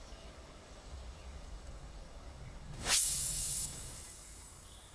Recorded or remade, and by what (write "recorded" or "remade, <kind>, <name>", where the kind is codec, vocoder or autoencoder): remade, codec, DAC